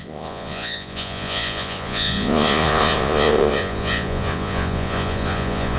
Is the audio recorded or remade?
remade